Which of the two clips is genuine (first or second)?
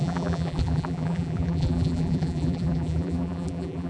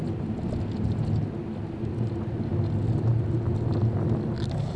second